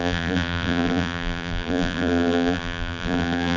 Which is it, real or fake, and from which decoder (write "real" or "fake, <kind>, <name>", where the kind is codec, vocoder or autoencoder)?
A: fake, vocoder, BigVGAN v2